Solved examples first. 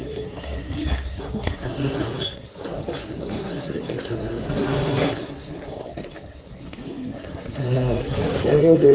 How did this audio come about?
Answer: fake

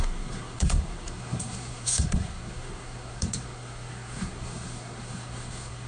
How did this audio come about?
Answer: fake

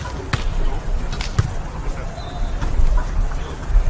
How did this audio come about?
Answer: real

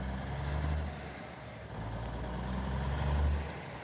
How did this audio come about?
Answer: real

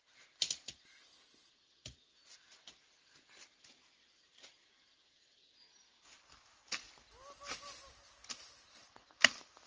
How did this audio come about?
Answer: real